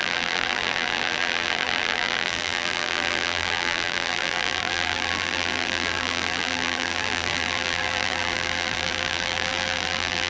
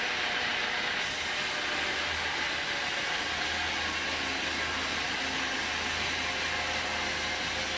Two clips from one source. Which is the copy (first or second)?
first